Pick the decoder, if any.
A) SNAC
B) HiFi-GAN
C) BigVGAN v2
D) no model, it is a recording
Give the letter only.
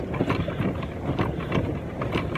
D